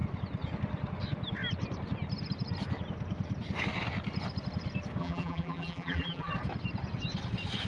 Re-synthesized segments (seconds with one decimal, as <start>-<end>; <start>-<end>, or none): 5.0-6.3

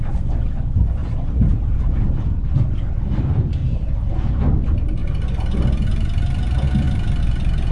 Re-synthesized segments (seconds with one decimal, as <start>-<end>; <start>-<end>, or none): 1.0-1.9; 3.6-4.1

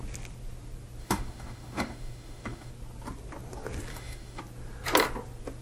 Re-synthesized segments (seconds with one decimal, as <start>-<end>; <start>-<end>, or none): 1.0-2.7; 3.9-4.4

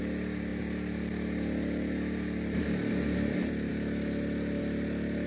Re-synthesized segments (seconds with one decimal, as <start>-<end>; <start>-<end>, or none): none